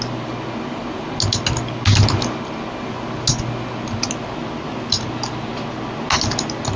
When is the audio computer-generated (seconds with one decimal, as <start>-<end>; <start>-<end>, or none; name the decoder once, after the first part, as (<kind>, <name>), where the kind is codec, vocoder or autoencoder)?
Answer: none